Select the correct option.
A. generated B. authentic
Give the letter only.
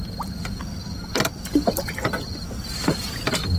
B